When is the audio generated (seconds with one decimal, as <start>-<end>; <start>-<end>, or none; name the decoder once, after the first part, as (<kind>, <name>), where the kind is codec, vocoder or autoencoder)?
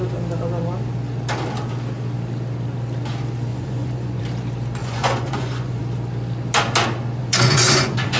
3.5-4.2 (vocoder, Vocos); 4.8-5.8; 7.2-8.2